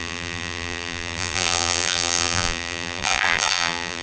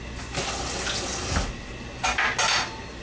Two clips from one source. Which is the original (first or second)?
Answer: second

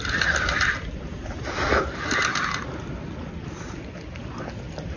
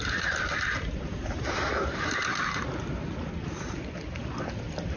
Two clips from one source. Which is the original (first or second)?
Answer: first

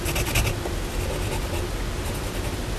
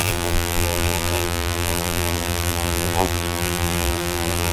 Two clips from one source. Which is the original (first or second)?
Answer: first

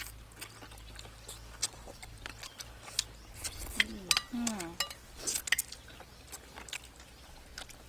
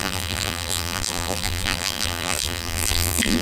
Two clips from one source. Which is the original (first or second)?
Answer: first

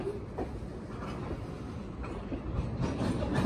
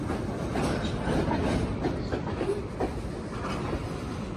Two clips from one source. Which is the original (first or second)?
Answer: first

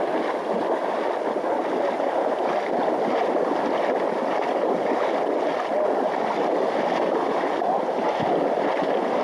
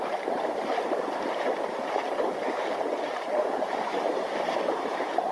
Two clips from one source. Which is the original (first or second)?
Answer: first